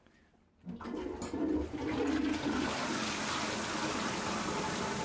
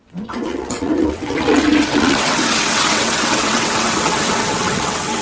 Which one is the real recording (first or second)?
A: first